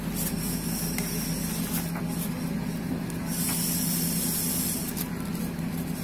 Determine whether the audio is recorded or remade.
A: recorded